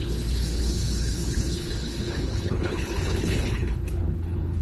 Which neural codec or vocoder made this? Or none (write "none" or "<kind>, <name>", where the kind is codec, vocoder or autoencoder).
codec, HILCodec